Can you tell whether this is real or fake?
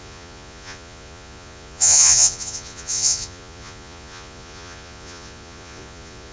fake